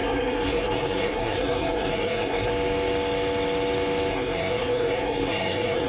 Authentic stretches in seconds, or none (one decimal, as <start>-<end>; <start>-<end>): 2.5-4.1